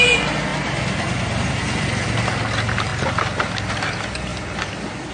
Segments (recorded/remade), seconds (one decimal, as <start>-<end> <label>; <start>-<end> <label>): 0.0-5.1 recorded